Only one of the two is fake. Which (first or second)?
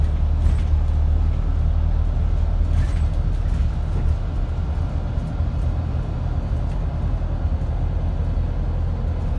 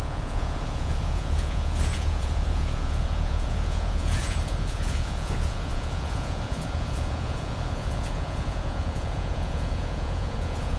second